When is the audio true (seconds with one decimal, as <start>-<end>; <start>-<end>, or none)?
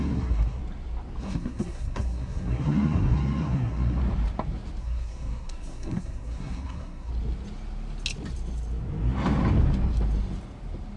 0.6-1.2; 4.0-4.8; 7.1-11.0